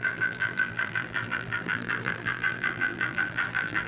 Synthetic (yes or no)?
yes